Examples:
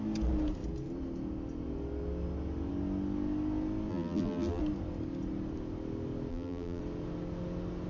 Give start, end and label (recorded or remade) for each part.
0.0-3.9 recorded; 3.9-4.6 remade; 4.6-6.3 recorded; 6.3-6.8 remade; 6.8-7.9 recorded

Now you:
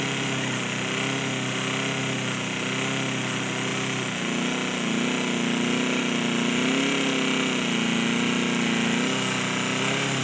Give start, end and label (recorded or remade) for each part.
0.0-10.2 recorded

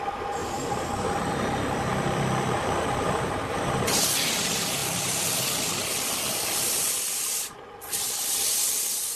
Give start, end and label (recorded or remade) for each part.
0.0-0.4 recorded; 0.4-1.3 remade; 1.3-9.2 recorded

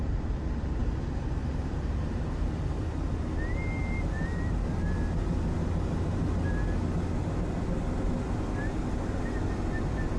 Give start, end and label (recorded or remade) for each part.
0.0-0.8 recorded; 0.8-2.3 remade; 2.3-10.2 recorded

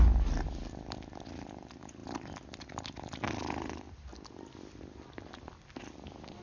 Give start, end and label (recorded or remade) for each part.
0.0-6.4 recorded

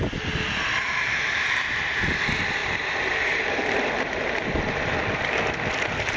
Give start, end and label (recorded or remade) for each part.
0.0-2.6 recorded; 2.6-6.2 remade